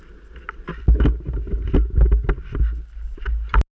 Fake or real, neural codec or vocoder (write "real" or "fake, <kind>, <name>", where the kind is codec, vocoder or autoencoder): real